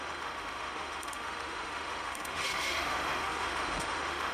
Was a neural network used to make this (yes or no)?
yes